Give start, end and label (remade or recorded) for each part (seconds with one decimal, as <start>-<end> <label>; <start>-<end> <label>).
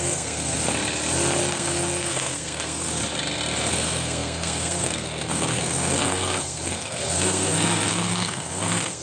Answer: 0.0-0.6 remade; 0.6-1.4 recorded; 1.4-3.0 remade; 3.0-3.7 recorded; 3.7-9.0 remade